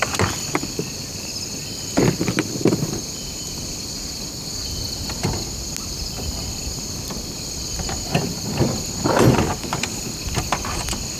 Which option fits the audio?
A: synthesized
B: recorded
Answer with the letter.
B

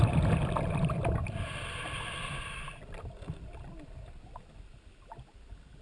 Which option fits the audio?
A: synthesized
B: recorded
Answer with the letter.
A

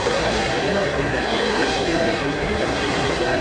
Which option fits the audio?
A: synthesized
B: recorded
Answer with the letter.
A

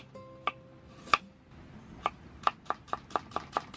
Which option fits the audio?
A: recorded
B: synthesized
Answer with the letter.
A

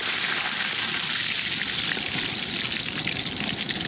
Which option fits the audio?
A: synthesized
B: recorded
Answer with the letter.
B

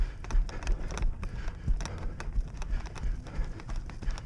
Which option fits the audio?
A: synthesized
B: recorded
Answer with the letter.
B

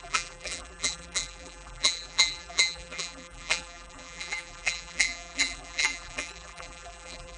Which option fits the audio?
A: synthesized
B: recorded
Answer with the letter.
A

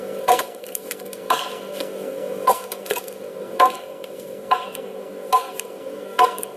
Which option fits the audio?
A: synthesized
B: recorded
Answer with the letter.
A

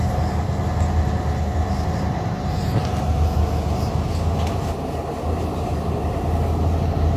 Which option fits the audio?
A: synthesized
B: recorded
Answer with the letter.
B